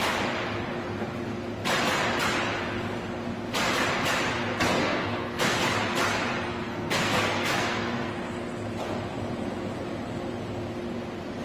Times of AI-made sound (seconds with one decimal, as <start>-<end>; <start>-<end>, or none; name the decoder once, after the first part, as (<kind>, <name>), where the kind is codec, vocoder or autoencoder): 4.8-5.6 (codec, SNAC); 6.5-8.1